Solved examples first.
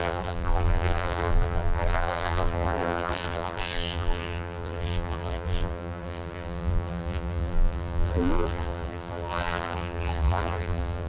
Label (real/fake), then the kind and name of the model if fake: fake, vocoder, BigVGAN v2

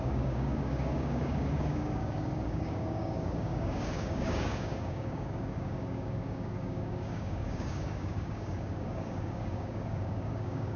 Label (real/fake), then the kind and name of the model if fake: fake, codec, DAC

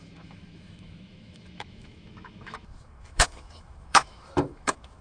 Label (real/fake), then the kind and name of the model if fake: fake, autoencoder, DAC-VAE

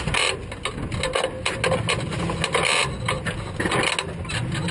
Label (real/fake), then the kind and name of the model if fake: real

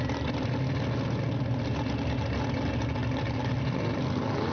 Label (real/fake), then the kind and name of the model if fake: real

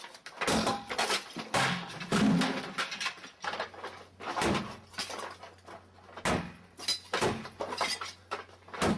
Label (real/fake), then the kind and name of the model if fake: real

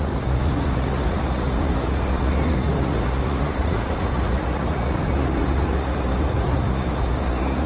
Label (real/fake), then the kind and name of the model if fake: fake, vocoder, Vocos